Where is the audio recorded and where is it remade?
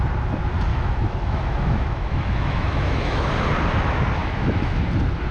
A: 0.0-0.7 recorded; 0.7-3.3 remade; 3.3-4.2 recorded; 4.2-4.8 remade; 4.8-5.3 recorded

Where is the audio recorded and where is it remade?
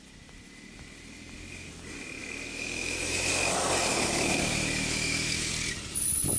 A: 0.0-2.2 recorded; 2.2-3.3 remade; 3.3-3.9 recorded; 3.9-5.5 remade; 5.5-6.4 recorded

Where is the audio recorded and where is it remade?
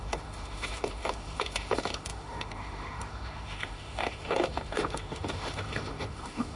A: 0.0-6.6 remade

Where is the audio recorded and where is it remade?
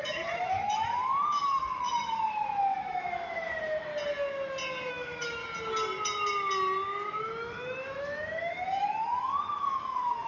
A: 0.0-3.9 remade; 3.9-4.9 recorded; 4.9-5.4 remade; 5.4-7.2 recorded; 7.2-10.3 remade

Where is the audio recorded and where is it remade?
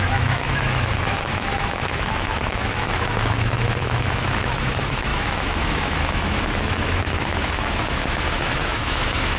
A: 0.0-9.4 remade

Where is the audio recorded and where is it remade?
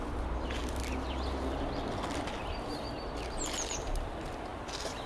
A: 0.0-5.1 recorded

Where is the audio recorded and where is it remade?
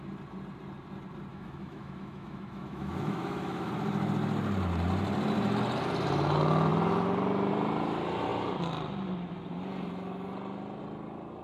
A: 0.0-1.3 recorded; 1.3-3.7 remade; 3.7-11.4 recorded